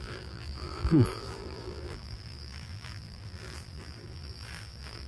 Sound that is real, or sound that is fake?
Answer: fake